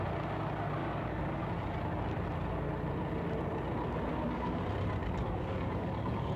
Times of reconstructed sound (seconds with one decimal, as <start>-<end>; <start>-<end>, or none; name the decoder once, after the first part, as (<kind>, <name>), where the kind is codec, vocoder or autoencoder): 0.8-1.4 (codec, DAC); 4.1-4.6; 5.0-6.4